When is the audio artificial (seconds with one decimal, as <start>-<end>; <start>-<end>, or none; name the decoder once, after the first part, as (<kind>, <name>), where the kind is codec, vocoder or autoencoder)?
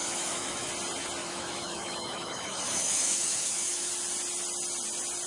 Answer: 0.0-0.7 (autoencoder, DAC-VAE); 1.2-3.9